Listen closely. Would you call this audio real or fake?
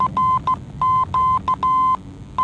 real